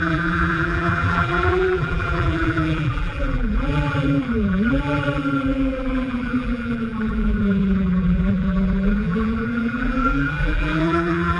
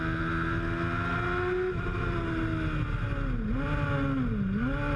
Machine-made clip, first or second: first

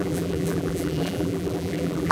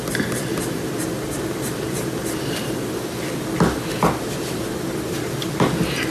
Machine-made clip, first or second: first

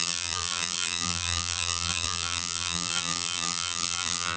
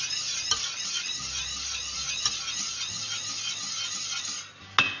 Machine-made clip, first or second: first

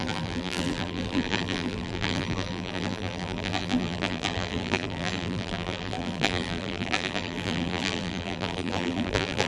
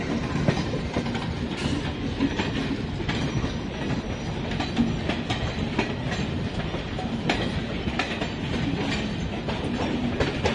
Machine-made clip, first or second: first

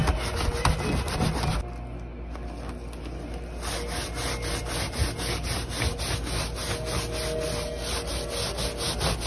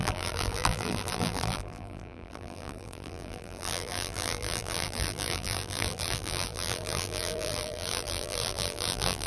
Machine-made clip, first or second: second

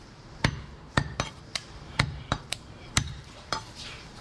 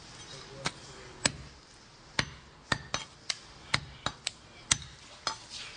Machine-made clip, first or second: first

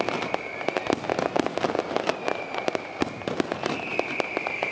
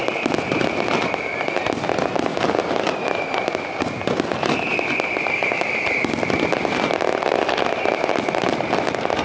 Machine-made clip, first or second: second